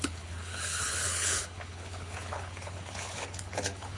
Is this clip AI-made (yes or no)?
yes